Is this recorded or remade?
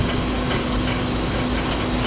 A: recorded